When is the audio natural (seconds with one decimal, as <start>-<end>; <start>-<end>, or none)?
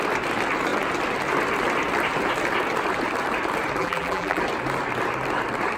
0.0-3.8; 4.4-5.8